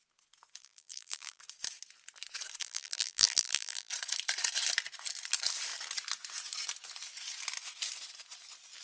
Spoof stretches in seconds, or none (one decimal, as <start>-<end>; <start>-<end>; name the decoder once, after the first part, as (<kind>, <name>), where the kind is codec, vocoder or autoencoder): 0.6-1.4 (vocoder, BigVGAN v2); 2.6-3.9